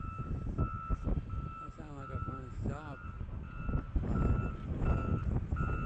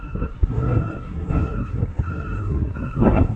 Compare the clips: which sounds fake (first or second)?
second